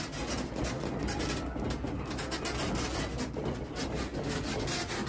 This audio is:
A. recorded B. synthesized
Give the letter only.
A